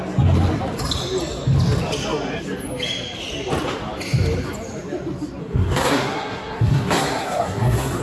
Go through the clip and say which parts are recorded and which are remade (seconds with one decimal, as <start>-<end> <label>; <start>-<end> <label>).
0.0-5.4 recorded; 5.4-8.0 remade

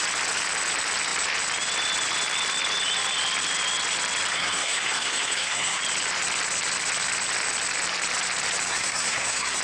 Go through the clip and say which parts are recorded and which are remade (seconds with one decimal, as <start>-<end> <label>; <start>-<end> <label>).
0.0-4.3 recorded; 4.3-5.8 remade; 5.8-8.7 recorded; 8.7-9.6 remade